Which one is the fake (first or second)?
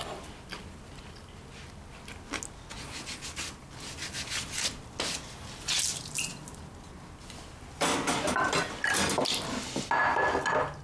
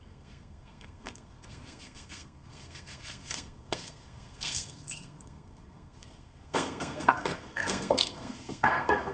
second